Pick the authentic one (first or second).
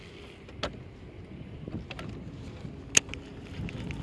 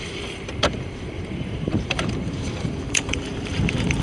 first